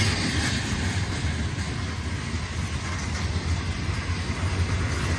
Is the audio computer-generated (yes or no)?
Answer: no